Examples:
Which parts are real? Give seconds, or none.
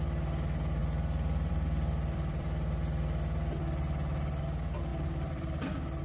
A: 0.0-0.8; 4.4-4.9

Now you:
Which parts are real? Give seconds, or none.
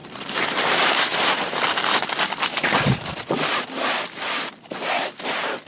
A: 0.7-1.1; 4.5-5.7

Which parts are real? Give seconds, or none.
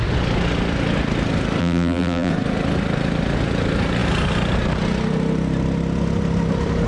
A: 0.0-1.6; 2.3-6.9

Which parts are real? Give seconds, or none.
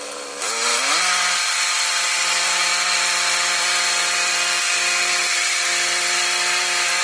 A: 0.7-1.9; 2.7-7.0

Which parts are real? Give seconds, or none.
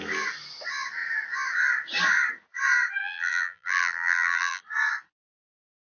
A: 0.0-3.0; 4.6-5.8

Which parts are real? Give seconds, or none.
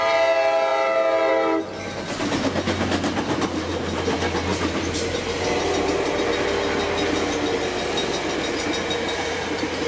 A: 0.0-4.5; 6.1-9.9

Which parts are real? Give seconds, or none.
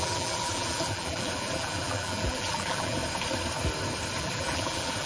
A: 3.0-4.2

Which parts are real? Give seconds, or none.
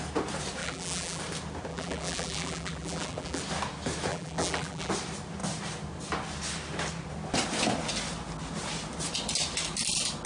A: 0.0-0.6; 1.2-1.7; 3.4-4.1; 4.9-10.3